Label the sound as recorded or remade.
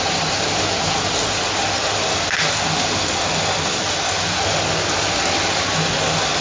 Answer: recorded